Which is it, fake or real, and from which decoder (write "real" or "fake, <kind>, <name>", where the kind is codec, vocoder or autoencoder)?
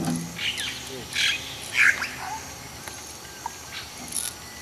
real